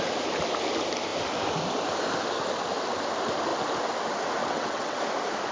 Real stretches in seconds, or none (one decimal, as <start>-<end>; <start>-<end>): 0.0-4.4; 5.0-5.5